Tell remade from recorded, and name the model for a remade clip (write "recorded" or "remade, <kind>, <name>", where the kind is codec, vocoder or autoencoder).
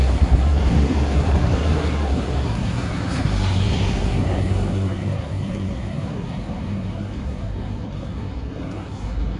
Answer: remade, codec, SNAC